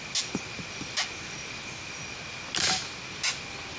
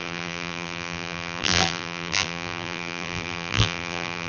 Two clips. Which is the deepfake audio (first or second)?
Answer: second